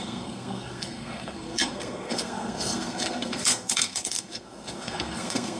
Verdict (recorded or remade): remade